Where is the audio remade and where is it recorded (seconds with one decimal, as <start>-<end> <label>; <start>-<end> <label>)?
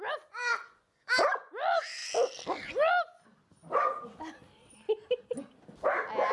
0.0-0.5 recorded; 0.5-1.1 remade; 1.1-6.3 recorded